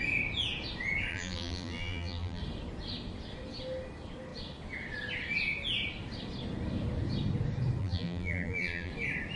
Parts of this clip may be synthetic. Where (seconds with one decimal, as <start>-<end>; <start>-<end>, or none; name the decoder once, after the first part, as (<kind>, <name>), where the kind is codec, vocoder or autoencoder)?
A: 1.1-2.4 (vocoder, BigVGAN v2); 7.8-8.9